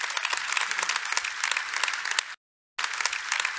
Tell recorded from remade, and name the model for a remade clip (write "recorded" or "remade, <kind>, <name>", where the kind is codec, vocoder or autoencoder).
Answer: recorded